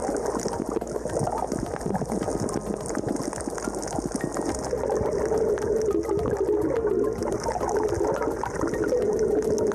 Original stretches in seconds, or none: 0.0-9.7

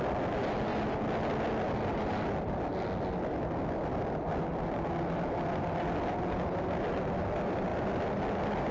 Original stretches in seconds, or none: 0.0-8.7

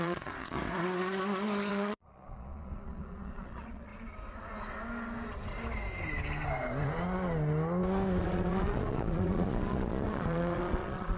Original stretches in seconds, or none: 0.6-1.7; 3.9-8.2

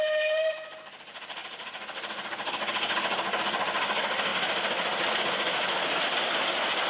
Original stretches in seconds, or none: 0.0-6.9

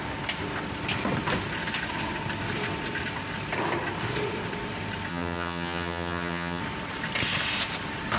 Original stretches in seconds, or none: 0.0-5.1; 6.6-8.2

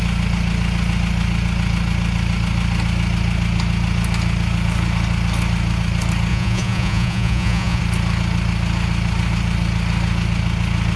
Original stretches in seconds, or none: 0.0-6.3; 7.8-11.0

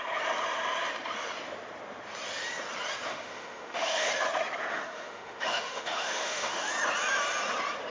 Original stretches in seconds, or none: 0.0-3.1; 4.1-4.7; 6.7-7.9